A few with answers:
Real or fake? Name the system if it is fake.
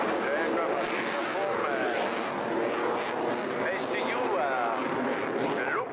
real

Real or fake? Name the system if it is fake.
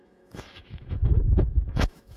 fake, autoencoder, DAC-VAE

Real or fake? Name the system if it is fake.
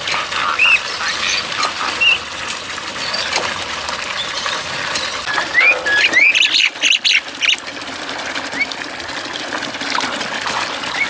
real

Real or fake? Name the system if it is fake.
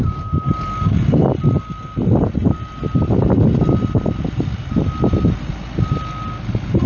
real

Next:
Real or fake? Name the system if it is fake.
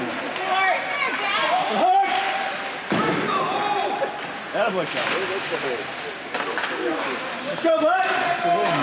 real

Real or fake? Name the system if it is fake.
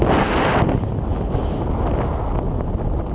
real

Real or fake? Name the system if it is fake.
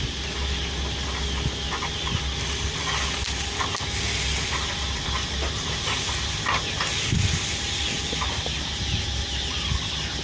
real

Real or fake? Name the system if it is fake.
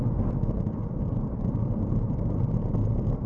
real